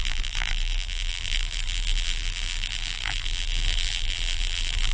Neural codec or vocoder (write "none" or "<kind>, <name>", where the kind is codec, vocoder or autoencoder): vocoder, BigVGAN v2